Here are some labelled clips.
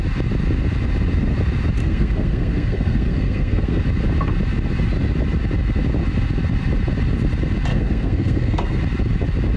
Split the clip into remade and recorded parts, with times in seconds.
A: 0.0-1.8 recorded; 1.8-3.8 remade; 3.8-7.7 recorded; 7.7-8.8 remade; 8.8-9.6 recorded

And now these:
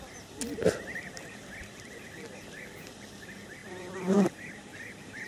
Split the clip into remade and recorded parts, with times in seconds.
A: 0.0-3.6 recorded; 3.6-5.3 remade

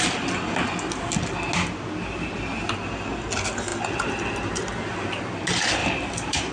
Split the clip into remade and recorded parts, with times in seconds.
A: 0.0-5.8 recorded; 5.8-6.5 remade

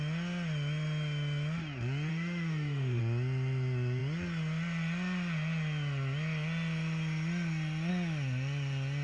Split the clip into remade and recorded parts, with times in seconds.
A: 0.0-2.1 recorded; 2.1-3.0 remade; 3.0-9.0 recorded

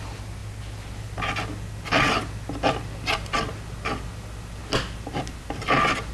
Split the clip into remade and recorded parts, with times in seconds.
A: 0.0-6.1 recorded

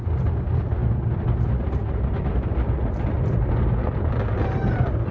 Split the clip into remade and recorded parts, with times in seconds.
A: 0.0-5.1 recorded